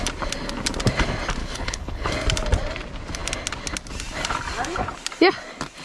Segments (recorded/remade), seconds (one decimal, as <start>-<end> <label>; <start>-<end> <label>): 0.0-1.4 recorded; 1.4-2.1 remade; 2.1-5.8 recorded